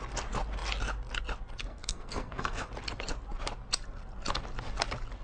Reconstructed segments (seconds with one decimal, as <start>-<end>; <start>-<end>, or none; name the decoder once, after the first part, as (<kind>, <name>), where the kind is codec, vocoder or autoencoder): 1.6-2.7 (codec, SNAC)